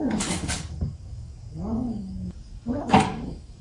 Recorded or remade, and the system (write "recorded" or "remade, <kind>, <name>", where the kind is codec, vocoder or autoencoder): remade, codec, DAC